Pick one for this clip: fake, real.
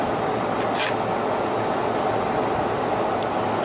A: real